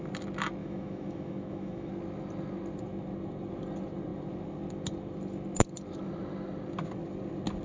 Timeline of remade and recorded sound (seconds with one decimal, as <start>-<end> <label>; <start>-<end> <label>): 0.0-0.6 recorded; 0.6-1.9 remade; 1.9-7.6 recorded